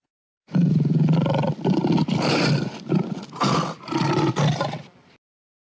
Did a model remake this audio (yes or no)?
no